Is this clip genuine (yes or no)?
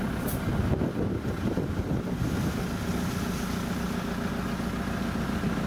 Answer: yes